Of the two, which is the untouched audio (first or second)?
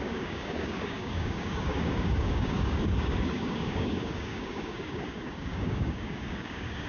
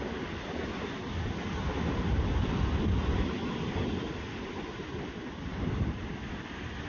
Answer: second